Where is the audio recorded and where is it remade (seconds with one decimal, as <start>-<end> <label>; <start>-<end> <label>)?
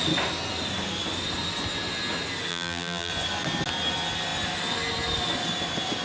0.0-2.5 recorded; 2.5-3.1 remade; 3.1-6.0 recorded